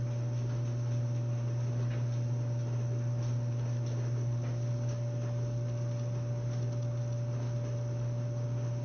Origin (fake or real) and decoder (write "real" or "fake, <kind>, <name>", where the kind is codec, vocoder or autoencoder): real